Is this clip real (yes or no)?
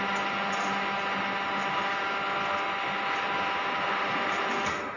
yes